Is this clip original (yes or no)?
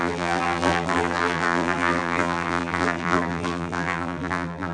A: no